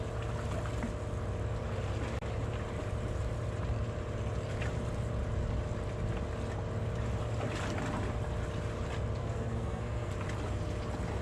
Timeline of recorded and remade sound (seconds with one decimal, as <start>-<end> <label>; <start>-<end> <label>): 0.0-9.2 recorded; 9.2-10.1 remade; 10.1-11.2 recorded